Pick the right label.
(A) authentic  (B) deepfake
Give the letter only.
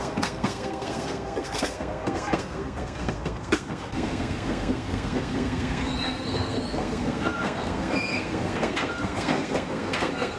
B